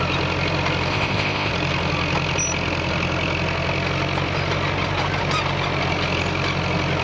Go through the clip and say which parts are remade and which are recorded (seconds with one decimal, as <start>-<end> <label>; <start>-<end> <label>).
0.0-0.9 recorded; 0.9-1.5 remade; 1.5-7.0 recorded